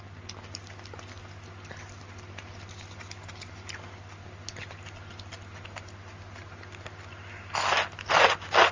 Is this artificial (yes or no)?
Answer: no